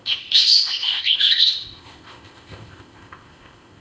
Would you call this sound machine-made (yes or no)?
yes